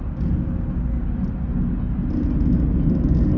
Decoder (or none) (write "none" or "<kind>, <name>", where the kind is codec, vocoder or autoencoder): none